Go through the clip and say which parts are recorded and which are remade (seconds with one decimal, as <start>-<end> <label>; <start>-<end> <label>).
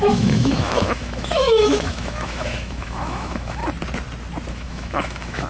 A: 0.0-3.6 remade; 3.6-4.5 recorded; 4.5-5.5 remade